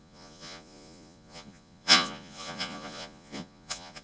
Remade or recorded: remade